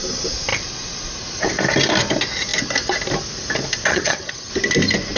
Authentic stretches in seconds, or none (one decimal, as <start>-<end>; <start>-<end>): 0.0-3.9; 4.5-5.2